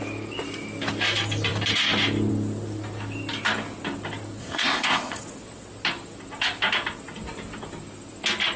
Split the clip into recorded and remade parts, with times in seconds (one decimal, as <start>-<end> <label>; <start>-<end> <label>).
0.0-4.4 recorded; 4.4-5.2 remade; 5.2-8.6 recorded